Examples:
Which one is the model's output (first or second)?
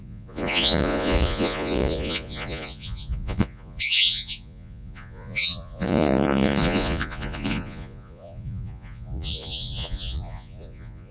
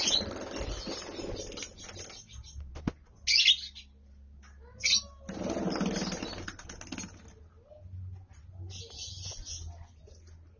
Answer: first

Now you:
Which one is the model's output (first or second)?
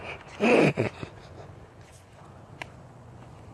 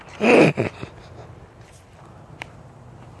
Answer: first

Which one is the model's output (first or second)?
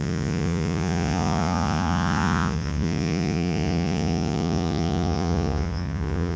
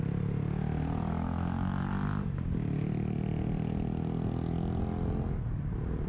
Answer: first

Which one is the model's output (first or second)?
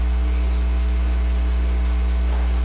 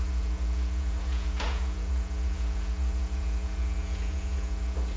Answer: second